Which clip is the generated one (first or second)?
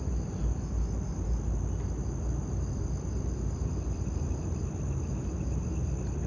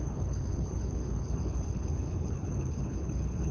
second